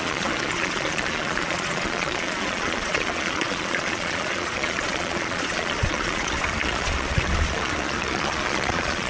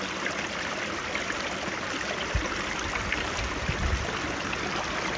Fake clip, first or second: first